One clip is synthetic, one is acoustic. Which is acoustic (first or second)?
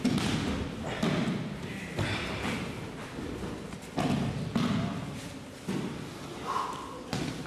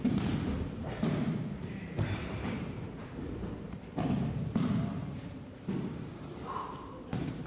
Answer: first